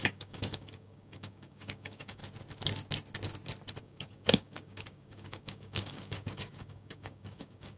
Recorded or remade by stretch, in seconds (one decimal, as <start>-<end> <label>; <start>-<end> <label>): 0.0-2.2 remade; 2.2-3.8 recorded; 3.8-7.8 remade